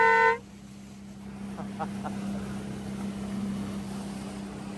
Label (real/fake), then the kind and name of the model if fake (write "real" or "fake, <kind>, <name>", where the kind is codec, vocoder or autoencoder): real